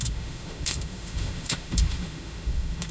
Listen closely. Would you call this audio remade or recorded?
remade